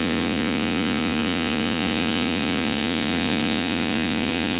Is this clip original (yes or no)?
no